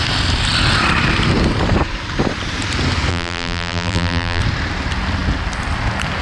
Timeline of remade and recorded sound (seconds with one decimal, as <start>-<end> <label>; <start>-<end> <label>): 0.0-3.1 recorded; 3.1-4.4 remade; 4.4-6.2 recorded